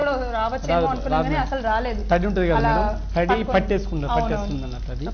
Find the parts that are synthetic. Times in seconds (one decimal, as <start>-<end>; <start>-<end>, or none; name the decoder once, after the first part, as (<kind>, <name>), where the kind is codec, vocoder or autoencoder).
none